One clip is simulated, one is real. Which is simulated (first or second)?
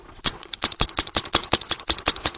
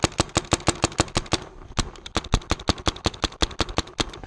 first